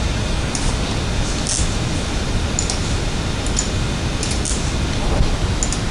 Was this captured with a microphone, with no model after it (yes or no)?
yes